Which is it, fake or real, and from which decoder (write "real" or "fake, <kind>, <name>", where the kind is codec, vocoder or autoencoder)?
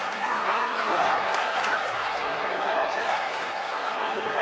fake, codec, SNAC